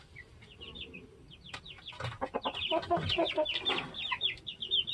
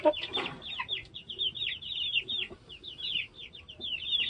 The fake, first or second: second